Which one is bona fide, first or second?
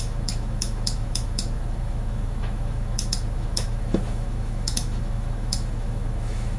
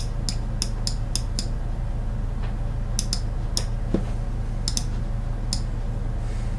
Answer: second